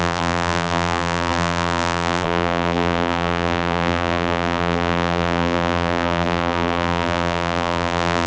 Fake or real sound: fake